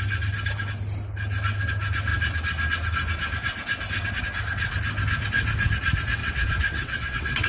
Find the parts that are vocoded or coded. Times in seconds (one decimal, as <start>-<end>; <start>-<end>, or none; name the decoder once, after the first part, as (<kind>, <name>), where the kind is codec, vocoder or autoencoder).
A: 6.2-7.5 (vocoder, WaveNeXt)